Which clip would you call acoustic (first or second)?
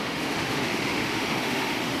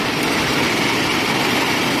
second